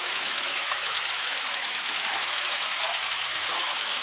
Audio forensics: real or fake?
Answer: fake